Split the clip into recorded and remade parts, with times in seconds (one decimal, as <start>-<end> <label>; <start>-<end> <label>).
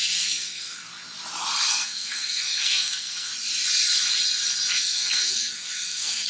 0.0-0.9 remade; 0.9-1.7 recorded; 1.7-3.3 remade; 3.3-4.7 recorded; 4.7-6.3 remade